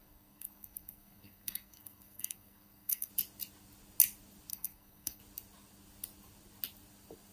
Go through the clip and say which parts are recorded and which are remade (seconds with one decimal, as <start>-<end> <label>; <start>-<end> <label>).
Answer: 0.0-3.1 remade; 3.1-4.5 recorded; 4.5-5.2 remade; 5.2-7.3 recorded